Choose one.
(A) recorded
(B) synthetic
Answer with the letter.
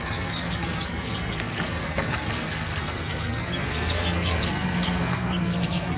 B